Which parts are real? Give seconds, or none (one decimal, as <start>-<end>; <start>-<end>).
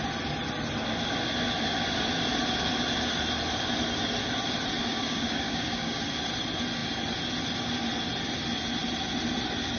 0.0-4.8; 6.0-9.8